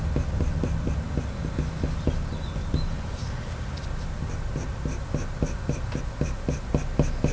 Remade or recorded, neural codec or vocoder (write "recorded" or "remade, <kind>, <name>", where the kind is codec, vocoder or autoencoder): recorded